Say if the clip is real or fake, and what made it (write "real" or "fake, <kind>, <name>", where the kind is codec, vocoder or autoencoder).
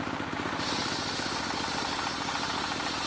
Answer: real